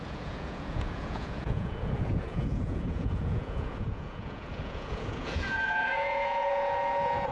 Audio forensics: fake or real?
fake